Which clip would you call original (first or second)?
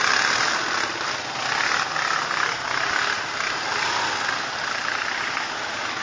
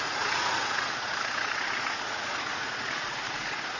first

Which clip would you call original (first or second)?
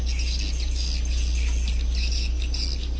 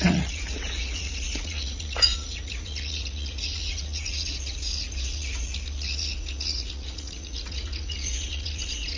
first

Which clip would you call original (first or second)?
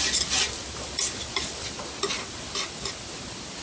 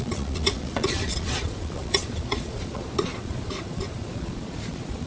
first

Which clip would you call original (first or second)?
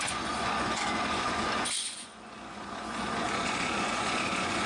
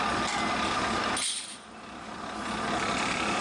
second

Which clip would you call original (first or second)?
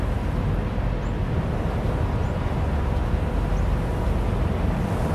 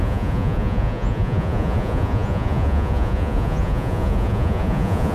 first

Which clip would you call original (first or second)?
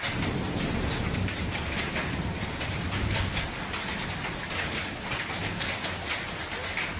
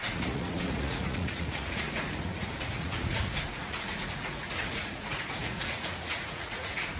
first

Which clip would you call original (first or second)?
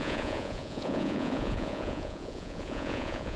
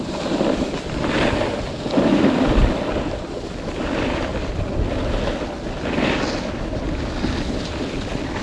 second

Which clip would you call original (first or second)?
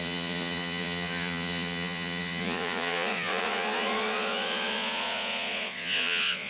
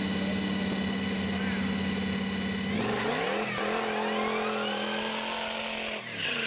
second